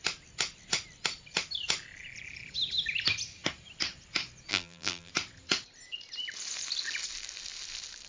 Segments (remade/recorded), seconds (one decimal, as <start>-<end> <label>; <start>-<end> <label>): 0.0-4.5 recorded; 4.5-5.1 remade; 5.1-8.1 recorded